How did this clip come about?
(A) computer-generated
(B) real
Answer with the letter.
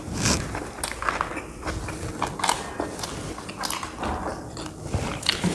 B